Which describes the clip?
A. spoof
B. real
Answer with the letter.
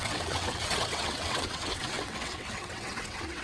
A